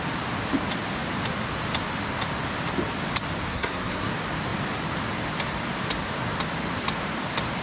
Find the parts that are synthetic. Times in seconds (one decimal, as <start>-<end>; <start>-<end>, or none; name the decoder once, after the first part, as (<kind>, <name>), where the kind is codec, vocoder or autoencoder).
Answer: 3.5-4.1 (codec, SNAC)